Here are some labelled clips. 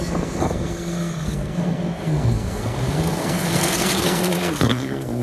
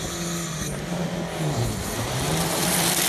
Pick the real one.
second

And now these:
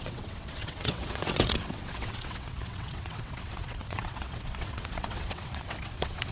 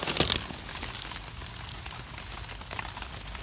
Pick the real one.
second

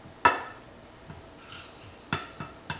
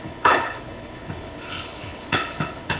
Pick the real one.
first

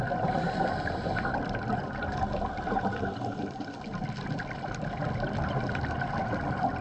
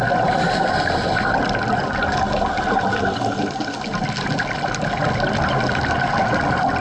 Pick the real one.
second